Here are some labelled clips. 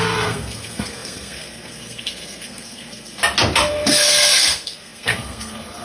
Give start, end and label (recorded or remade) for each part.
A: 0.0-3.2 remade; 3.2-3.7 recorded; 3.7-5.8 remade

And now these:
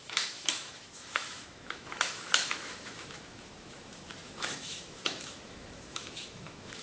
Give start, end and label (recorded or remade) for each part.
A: 0.0-6.8 remade

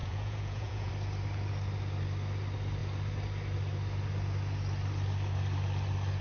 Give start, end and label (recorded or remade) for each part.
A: 0.0-0.9 remade; 0.9-6.2 recorded

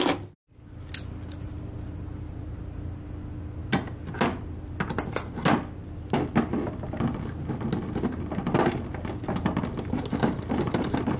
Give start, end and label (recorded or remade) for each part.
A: 0.0-11.2 recorded

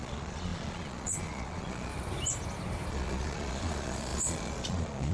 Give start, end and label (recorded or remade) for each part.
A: 0.0-1.9 remade; 1.9-2.9 recorded; 2.9-5.1 remade

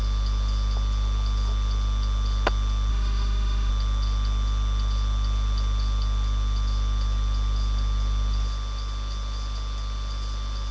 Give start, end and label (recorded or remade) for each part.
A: 0.0-2.9 recorded; 2.9-3.7 remade; 3.7-10.7 recorded